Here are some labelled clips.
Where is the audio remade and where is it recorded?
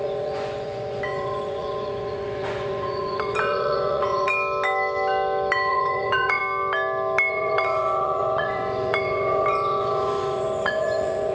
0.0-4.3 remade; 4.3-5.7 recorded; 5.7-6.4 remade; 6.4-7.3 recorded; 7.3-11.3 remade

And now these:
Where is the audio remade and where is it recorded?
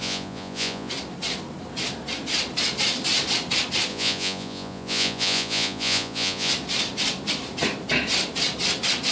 0.0-0.9 remade; 0.9-3.9 recorded; 3.9-6.5 remade; 6.5-9.1 recorded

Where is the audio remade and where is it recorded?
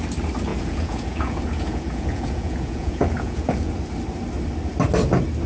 0.0-0.5 recorded; 0.5-3.7 remade; 3.7-5.5 recorded